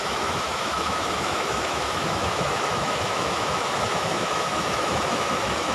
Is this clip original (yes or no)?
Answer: no